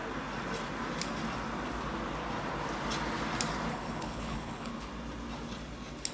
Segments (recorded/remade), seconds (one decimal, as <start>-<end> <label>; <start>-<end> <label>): 0.0-3.7 recorded; 3.7-4.7 remade; 4.7-6.1 recorded

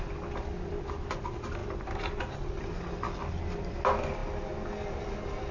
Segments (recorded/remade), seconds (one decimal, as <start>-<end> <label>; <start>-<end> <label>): 0.0-5.5 recorded